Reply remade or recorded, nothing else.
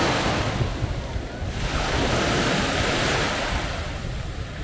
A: recorded